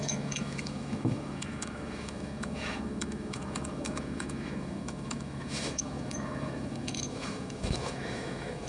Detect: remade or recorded remade